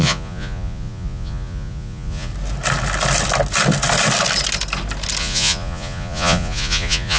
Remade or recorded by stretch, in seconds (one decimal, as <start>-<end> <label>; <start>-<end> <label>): 0.0-2.3 remade; 2.3-5.2 recorded; 5.2-7.2 remade